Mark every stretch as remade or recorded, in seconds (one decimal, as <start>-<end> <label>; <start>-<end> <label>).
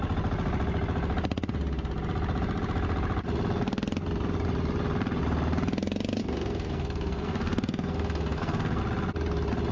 0.0-6.2 recorded; 6.2-8.8 remade; 8.8-9.7 recorded